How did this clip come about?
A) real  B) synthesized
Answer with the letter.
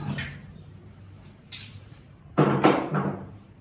B